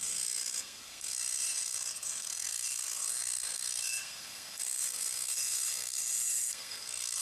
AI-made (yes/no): yes